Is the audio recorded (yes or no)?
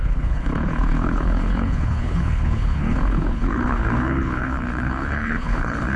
no